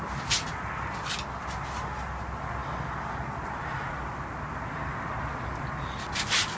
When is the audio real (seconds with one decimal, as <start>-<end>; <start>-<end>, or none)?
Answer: 0.0-6.6